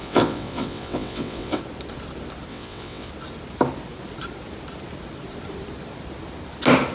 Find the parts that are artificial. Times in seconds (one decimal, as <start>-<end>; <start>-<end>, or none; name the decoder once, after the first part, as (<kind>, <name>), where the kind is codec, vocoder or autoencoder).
0.0-1.6 (vocoder, WaveNeXt); 2.5-3.1